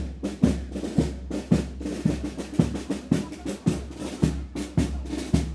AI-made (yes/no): no